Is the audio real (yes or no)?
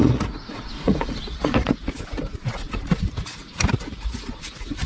no